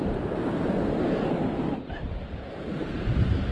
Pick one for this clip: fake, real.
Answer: fake